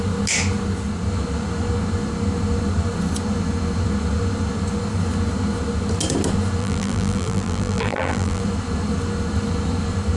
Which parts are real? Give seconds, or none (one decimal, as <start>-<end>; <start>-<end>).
0.0-6.6; 8.4-10.2